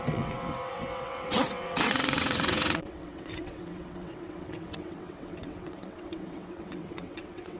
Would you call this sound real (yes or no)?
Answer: no